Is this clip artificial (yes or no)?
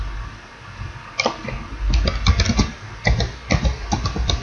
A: no